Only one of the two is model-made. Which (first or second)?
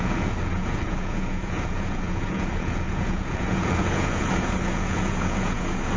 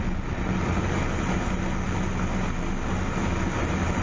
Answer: first